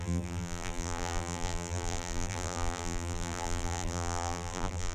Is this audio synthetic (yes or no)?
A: yes